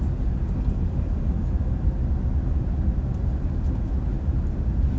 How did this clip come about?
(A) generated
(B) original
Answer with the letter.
B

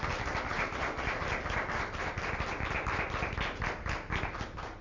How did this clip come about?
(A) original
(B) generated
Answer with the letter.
A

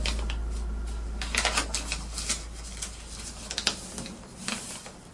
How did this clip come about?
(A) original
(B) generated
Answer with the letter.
A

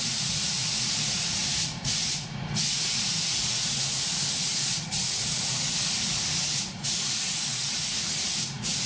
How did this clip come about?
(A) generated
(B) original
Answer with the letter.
A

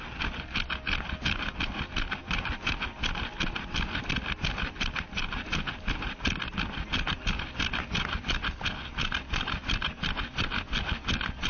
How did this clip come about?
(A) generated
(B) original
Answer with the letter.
B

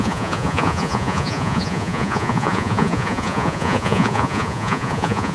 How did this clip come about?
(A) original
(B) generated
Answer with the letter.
B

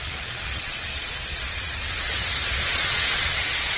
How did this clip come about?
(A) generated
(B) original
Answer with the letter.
A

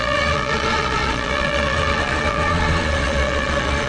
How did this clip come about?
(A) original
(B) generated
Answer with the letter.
B